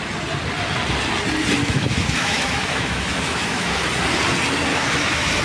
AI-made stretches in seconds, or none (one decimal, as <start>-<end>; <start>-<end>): 1.6-3.8; 4.7-5.4